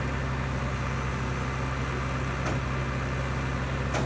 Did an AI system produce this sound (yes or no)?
no